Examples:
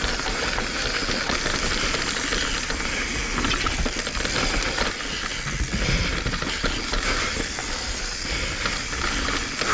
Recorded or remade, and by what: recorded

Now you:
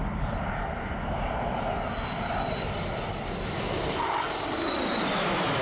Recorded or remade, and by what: recorded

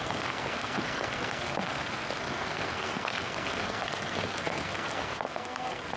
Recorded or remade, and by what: remade, codec, SNAC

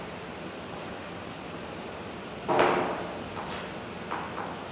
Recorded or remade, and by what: recorded